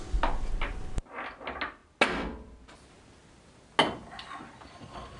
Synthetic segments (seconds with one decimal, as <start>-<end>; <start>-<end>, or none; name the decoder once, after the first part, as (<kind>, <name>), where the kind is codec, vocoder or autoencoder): none